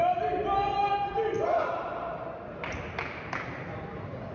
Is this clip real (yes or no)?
yes